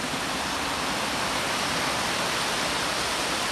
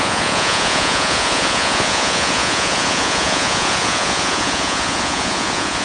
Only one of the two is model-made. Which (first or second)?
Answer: second